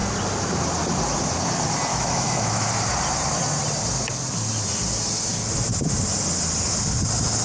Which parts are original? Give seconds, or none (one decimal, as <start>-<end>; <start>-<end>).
0.0-1.9; 2.7-7.4